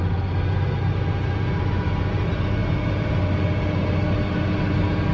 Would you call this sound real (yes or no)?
yes